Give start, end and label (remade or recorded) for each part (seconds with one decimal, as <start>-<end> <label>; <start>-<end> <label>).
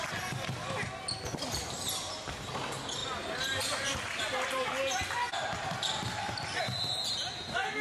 0.0-7.8 recorded